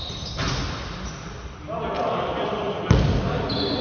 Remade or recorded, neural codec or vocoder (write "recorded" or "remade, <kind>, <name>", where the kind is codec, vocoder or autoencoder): recorded